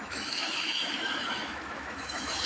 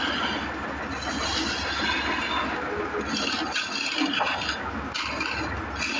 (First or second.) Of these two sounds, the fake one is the first